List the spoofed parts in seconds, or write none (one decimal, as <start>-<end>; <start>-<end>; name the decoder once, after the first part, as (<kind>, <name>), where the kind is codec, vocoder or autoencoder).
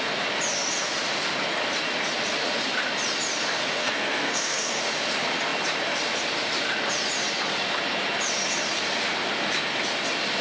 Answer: 3.8-4.8 (codec, SNAC)